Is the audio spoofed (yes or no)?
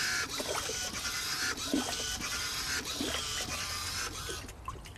yes